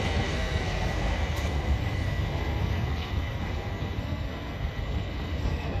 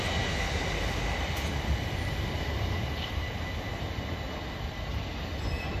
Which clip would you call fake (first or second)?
first